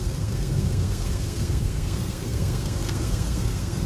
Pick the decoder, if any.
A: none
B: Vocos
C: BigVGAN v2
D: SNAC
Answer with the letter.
D